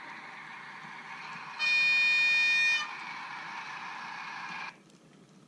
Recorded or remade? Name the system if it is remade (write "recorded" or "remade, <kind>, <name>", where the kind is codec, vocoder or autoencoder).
recorded